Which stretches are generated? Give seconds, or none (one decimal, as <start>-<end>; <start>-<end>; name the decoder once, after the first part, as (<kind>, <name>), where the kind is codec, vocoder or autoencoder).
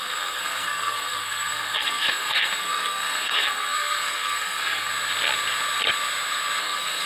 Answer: 0.0-4.9 (codec, SNAC); 6.6-7.1